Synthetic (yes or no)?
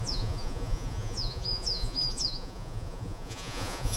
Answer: yes